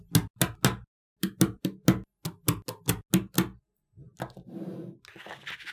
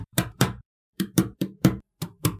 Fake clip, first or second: second